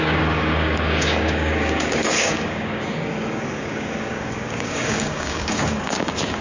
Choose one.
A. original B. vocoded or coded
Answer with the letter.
B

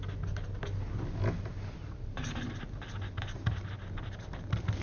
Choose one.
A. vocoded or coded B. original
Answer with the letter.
B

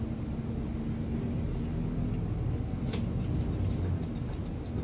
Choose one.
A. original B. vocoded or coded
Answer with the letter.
A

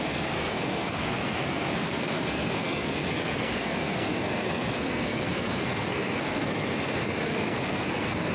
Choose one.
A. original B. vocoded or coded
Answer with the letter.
B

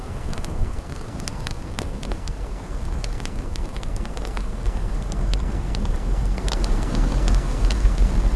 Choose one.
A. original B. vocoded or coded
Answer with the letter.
B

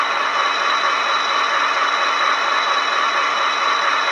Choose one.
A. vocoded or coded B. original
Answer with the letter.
B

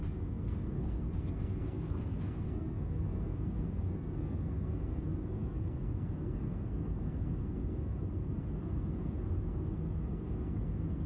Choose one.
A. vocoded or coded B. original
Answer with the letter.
A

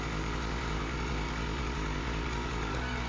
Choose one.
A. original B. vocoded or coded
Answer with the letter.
B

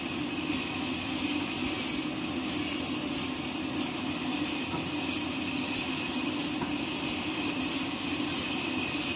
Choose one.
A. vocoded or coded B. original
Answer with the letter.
B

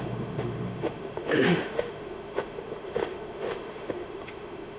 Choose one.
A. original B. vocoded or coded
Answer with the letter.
B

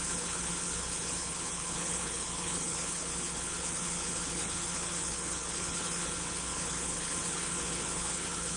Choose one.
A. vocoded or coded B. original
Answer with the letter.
A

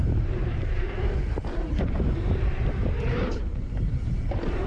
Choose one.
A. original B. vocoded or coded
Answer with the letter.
B